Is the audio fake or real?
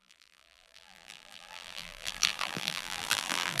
fake